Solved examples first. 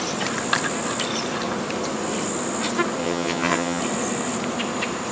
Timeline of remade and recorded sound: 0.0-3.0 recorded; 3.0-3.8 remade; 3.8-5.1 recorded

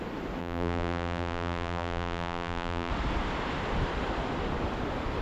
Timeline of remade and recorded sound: 0.0-0.4 recorded; 0.4-2.9 remade; 2.9-5.2 recorded